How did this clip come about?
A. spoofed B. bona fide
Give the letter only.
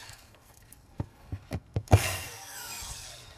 A